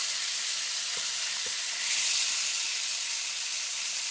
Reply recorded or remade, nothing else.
recorded